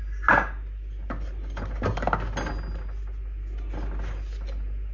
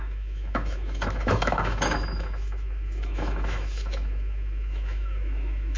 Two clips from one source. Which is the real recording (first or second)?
first